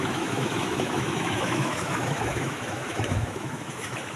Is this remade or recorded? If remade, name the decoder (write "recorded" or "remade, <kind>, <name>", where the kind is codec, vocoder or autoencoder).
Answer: remade, autoencoder, DAC-VAE